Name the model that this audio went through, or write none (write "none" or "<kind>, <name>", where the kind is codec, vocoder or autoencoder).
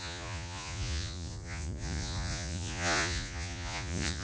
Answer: vocoder, Vocos